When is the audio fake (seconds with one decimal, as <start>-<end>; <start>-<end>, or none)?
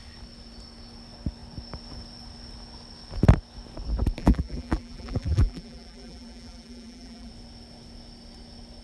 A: 4.2-7.3